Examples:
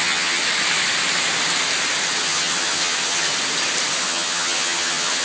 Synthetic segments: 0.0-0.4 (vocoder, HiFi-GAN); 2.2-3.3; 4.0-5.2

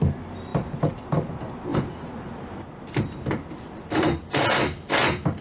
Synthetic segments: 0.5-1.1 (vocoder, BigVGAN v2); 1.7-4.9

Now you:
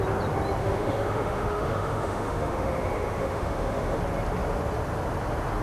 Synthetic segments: 0.6-4.0 (autoencoder, DAC-VAE)

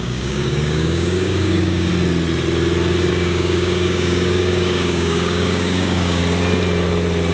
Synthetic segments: 0.0-1.9 (codec, DAC); 3.1-6.2

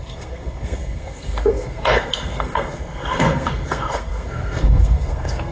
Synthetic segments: 0.0-5.5 (codec, SNAC)

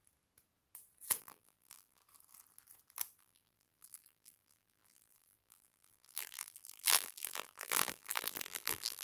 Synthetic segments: 1.2-2.0 (vocoder, BigVGAN v2); 3.2-9.0